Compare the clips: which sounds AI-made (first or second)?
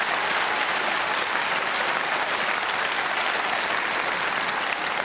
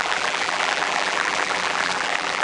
second